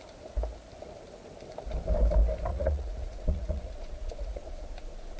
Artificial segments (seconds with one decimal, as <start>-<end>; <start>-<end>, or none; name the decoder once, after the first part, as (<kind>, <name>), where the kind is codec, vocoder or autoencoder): 2.5-5.2 (vocoder, Vocos)